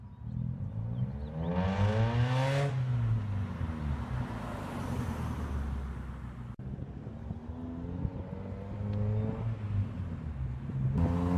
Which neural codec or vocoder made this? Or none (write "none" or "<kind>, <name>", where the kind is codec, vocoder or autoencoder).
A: none